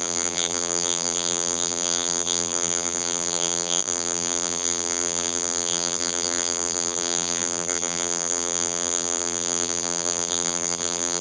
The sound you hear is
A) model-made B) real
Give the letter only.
A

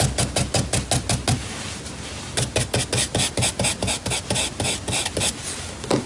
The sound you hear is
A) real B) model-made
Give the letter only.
A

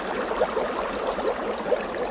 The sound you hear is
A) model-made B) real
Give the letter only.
B